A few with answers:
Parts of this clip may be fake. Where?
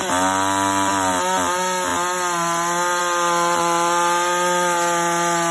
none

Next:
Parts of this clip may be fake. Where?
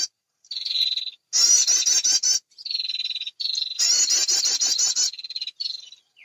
none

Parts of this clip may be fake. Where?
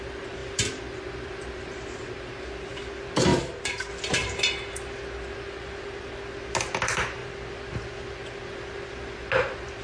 0.4-1.6 (vocoder, BigVGAN v2)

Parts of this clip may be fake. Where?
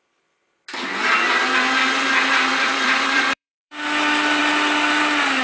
2.5-3.7 (vocoder, BigVGAN v2)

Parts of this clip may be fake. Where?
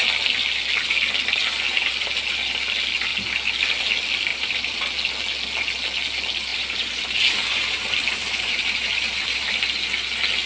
4.3-4.8 (vocoder, BigVGAN v2); 6.5-9.5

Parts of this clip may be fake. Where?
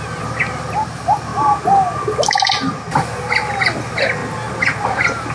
0.0-1.3 (vocoder, BigVGAN v2); 2.5-4.2; 4.8-5.3